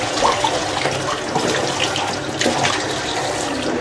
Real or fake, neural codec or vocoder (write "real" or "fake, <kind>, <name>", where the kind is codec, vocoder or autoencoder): real